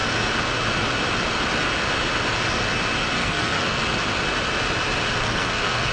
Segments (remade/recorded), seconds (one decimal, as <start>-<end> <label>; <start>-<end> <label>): 0.0-3.2 recorded; 3.2-3.8 remade; 3.8-5.2 recorded; 5.2-5.9 remade